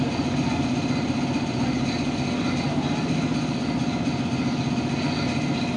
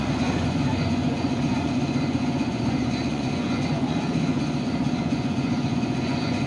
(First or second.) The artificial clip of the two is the second